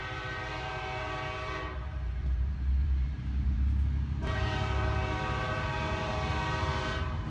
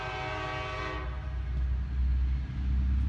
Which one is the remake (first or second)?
first